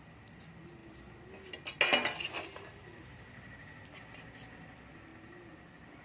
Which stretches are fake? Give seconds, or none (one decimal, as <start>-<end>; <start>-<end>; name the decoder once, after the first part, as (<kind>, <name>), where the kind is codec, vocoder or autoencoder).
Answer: none

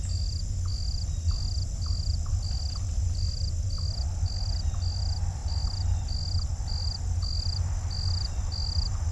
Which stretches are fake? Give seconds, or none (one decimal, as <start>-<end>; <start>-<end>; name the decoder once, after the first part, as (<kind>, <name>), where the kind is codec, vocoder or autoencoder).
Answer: none

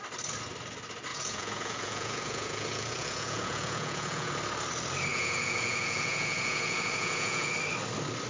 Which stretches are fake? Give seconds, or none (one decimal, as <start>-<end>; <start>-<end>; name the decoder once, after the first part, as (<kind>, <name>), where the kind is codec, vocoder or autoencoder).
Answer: 1.1-4.3 (vocoder, Vocos); 5.1-7.5

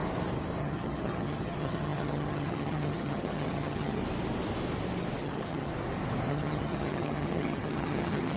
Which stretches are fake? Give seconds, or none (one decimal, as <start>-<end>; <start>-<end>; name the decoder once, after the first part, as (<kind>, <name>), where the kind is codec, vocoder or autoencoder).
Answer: 0.6-4.0 (vocoder, HiFi-GAN); 5.2-5.7; 6.3-8.4

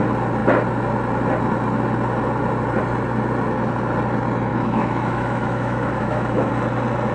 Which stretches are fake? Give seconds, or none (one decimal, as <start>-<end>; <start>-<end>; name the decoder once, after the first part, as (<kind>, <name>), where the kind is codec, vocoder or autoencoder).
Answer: 4.5-6.5 (autoencoder, DAC-VAE)

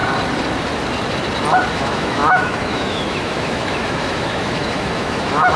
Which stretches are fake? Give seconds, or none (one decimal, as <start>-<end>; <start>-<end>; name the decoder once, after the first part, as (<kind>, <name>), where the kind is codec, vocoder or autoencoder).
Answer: 1.7-5.6 (autoencoder, DAC-VAE)

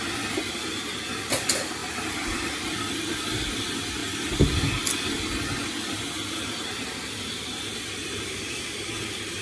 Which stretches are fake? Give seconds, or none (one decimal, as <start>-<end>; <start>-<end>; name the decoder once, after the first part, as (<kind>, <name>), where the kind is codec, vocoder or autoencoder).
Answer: 1.8-2.4 (vocoder, BigVGAN v2); 8.0-8.9